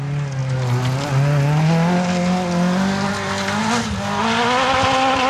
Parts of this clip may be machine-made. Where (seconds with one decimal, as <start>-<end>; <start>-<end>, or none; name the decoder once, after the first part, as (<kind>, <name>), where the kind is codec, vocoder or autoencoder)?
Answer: none